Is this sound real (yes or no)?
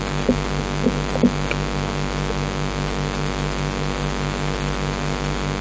yes